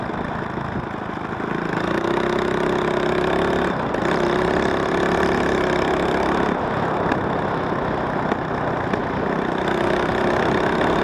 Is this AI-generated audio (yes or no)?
no